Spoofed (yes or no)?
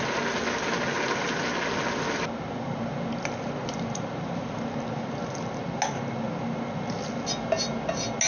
no